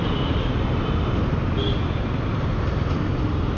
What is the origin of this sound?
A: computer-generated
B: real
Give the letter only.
B